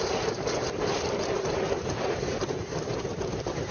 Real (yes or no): no